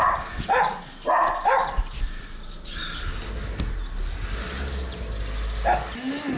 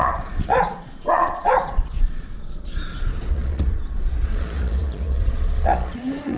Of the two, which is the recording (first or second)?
first